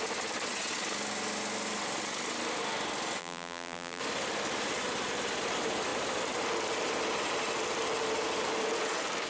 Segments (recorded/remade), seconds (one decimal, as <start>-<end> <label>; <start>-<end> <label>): 0.0-3.2 recorded; 3.2-4.0 remade; 4.0-9.3 recorded